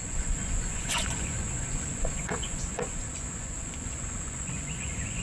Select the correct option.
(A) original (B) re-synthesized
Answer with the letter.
B